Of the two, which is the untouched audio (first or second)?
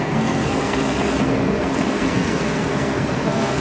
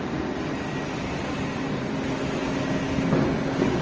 second